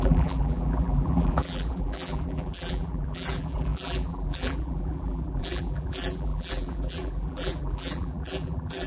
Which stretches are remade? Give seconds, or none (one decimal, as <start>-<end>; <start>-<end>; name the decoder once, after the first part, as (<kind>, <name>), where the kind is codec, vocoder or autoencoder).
0.0-8.9 (vocoder, BigVGAN v2)